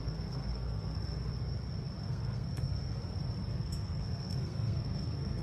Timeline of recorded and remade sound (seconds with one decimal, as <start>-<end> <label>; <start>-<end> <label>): 0.0-1.3 remade; 1.3-2.0 recorded; 2.0-3.0 remade; 3.0-3.5 recorded; 3.5-5.4 remade